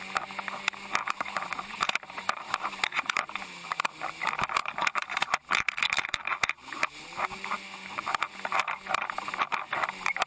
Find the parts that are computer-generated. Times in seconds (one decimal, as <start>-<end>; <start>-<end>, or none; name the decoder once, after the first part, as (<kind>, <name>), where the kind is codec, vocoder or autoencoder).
none